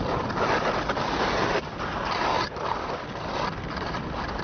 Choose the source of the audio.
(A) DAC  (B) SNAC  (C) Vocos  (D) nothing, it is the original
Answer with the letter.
D